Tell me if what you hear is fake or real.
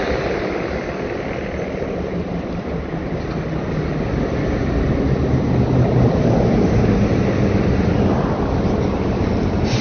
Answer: real